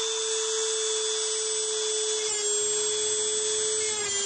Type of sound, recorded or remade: recorded